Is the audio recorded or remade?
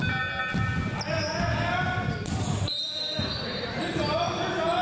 recorded